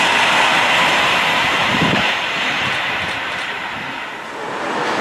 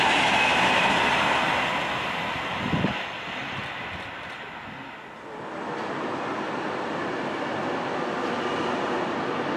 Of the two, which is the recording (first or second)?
second